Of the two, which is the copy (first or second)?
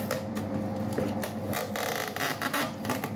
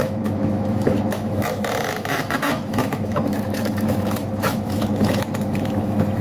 second